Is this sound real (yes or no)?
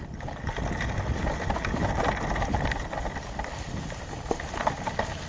yes